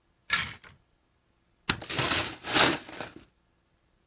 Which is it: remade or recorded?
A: recorded